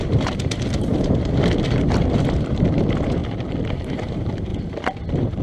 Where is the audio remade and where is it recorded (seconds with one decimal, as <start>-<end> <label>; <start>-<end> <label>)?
0.0-3.2 remade; 3.2-3.7 recorded; 3.7-4.5 remade; 4.5-5.4 recorded